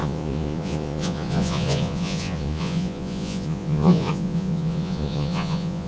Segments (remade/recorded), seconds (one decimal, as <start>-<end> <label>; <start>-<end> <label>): 0.0-5.9 remade